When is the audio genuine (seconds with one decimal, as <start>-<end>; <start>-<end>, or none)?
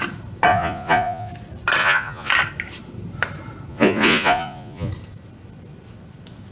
0.0-0.5; 1.3-1.8; 2.3-3.7; 4.9-6.5